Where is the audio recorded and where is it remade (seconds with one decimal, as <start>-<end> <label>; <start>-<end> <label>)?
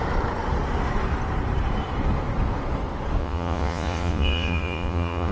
0.0-3.2 recorded; 3.2-5.3 remade